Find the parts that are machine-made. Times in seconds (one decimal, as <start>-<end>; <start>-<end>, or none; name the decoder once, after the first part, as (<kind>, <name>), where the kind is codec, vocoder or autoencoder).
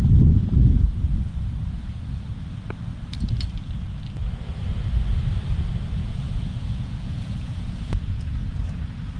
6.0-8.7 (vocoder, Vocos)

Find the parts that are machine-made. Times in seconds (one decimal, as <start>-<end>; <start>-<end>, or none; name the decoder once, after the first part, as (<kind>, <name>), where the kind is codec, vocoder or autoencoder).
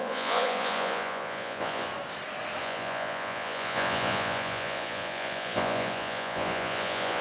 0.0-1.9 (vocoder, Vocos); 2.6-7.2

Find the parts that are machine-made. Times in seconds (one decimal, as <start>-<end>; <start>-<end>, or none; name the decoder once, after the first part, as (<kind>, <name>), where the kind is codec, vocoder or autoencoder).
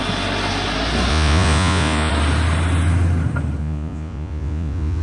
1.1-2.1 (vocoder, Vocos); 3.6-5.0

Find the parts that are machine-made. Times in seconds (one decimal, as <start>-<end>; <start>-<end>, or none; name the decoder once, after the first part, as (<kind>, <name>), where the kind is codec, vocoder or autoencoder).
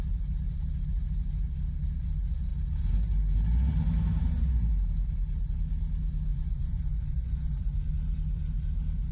6.3-7.9 (vocoder, Vocos)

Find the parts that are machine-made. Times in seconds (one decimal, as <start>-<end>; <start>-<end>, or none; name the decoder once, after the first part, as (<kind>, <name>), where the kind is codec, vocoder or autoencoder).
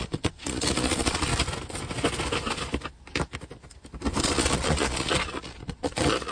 0.0-1.3 (vocoder, Vocos); 4.2-6.3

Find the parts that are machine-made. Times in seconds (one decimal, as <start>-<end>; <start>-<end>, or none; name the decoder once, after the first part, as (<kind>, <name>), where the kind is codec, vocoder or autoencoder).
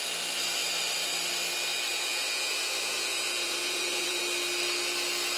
1.9-4.2 (vocoder, Vocos)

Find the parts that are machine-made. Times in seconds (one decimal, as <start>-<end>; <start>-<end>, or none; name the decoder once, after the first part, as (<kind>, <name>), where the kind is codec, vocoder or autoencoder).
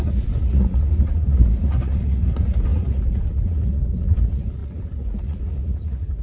0.0-6.2 (vocoder, Vocos)